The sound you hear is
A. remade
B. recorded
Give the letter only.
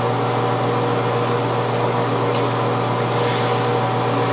B